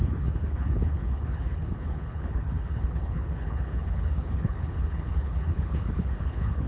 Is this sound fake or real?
fake